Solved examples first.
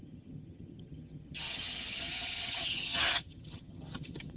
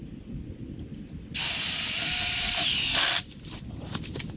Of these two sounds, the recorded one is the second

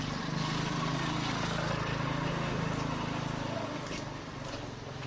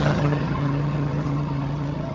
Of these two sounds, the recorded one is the first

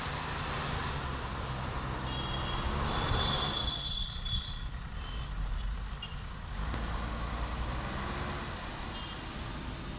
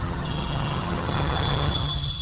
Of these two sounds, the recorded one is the first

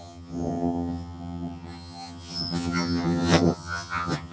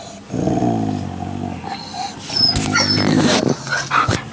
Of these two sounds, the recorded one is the second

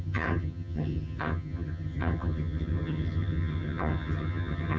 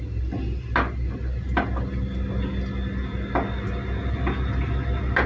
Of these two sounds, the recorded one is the second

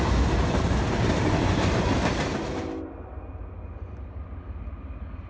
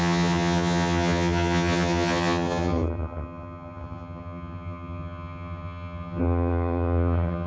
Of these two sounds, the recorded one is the first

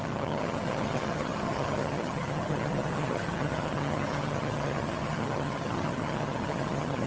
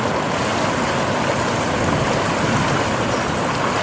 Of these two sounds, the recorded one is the second